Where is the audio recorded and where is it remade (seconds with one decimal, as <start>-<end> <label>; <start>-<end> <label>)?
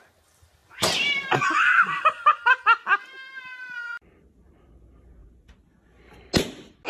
0.0-0.6 recorded; 0.6-4.7 remade; 4.7-6.9 recorded